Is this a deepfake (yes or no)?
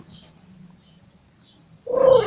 no